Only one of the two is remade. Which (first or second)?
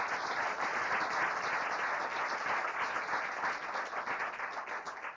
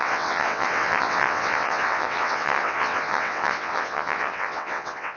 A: second